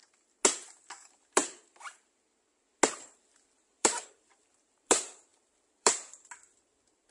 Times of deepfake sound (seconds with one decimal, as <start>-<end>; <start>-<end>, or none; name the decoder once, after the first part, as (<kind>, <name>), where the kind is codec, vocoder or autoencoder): 0.8-1.4 (vocoder, BigVGAN v2); 2.9-7.1